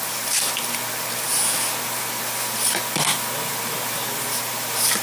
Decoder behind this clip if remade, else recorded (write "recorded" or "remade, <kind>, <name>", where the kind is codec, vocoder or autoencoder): recorded